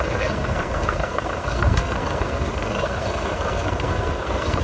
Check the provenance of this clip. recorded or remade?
remade